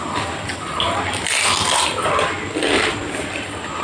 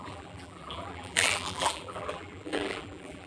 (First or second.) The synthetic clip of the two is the second